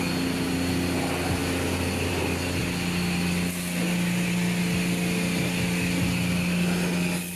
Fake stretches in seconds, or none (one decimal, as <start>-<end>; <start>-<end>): none